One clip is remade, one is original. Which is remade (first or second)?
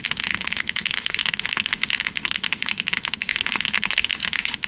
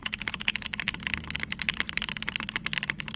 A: first